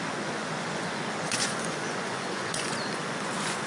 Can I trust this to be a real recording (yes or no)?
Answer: no